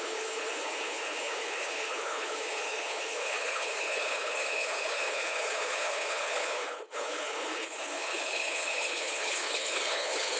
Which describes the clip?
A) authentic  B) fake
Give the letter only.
B